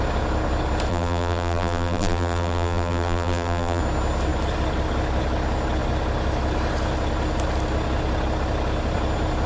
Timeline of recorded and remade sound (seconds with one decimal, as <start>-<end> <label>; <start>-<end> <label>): 0.0-0.9 recorded; 0.9-3.8 remade; 3.8-9.5 recorded